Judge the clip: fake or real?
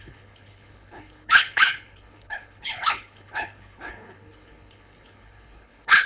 fake